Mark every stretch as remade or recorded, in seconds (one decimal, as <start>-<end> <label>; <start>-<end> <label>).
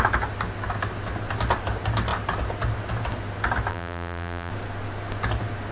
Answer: 0.0-3.7 recorded; 3.7-4.5 remade; 4.5-5.7 recorded